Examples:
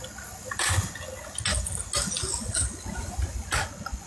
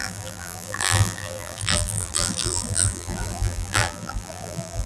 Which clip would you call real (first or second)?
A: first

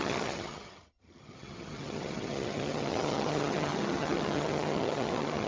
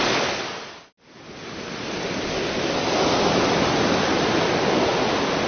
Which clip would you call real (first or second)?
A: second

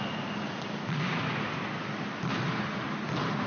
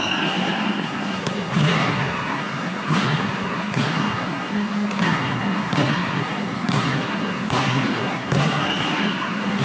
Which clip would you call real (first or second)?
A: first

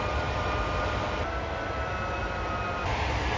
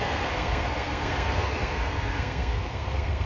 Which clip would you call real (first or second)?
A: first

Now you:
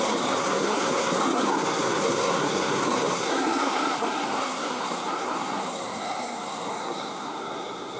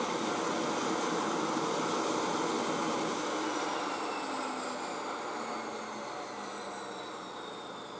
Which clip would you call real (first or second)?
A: second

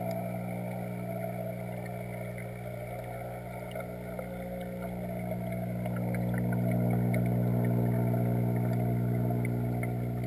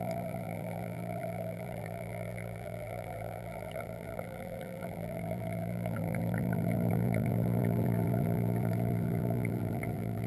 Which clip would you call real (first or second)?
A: first